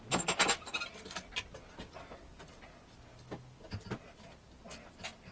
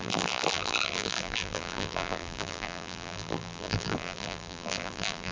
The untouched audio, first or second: first